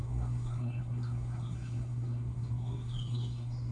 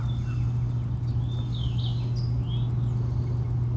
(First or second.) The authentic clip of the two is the second